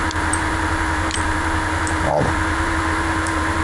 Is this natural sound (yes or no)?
no